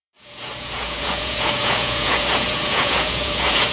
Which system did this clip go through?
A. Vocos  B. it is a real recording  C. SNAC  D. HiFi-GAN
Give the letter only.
A